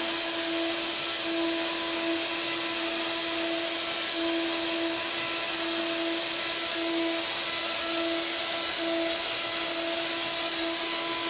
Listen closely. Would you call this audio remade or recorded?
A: recorded